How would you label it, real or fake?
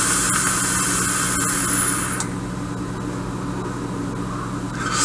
real